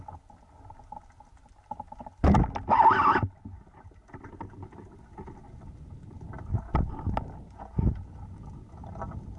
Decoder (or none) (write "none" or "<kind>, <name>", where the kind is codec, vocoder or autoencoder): none